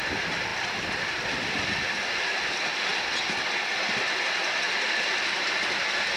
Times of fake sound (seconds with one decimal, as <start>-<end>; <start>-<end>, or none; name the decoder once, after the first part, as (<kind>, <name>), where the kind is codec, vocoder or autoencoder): none